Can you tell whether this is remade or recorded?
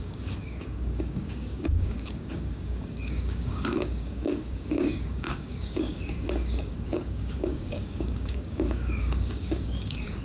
remade